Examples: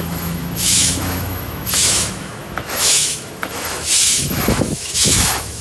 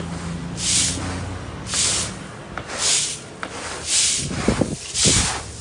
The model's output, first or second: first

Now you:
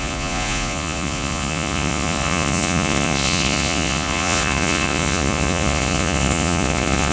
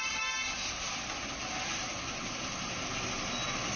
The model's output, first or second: first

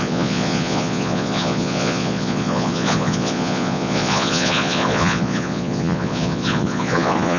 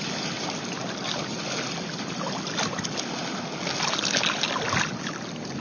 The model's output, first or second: first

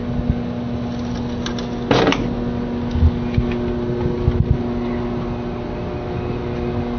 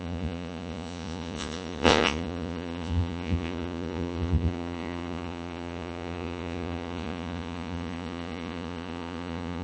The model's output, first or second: second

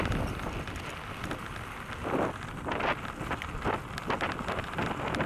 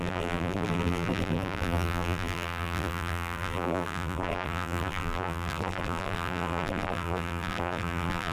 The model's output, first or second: second